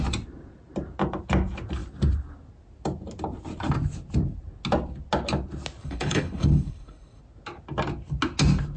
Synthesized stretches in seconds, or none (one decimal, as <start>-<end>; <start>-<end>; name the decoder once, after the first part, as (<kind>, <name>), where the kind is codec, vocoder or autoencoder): 5.8-7.2 (codec, HILCodec)